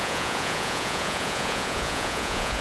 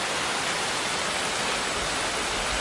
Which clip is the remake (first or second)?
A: first